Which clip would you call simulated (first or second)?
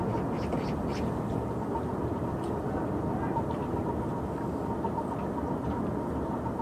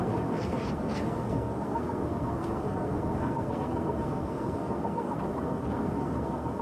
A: second